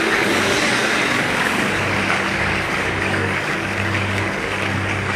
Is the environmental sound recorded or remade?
remade